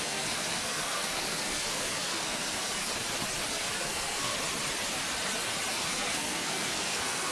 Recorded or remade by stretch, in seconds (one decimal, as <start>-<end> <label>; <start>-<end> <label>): 0.0-2.9 remade; 2.9-3.5 recorded; 3.5-4.3 remade; 4.3-5.7 recorded; 5.7-7.3 remade